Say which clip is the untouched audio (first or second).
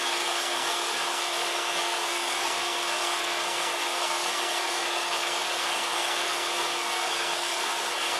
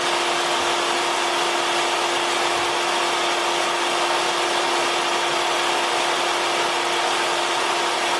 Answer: second